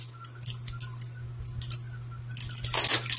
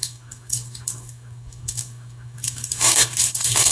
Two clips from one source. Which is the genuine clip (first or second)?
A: first